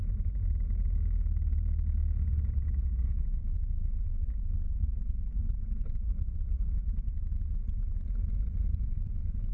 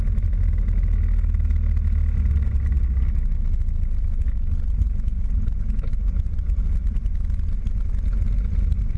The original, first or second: second